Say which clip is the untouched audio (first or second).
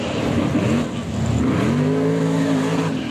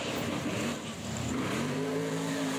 first